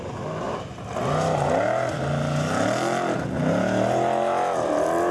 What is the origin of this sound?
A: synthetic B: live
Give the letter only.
B